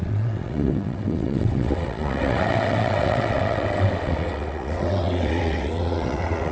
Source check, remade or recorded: remade